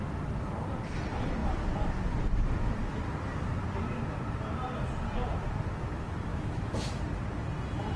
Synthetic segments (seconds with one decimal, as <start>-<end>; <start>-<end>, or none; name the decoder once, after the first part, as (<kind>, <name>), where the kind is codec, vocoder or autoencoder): 6.3-7.0 (autoencoder, DAC-VAE)